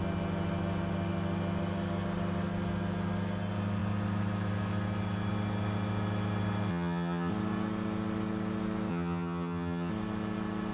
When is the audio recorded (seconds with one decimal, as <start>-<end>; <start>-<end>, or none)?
0.0-6.7; 7.3-8.9; 9.9-10.7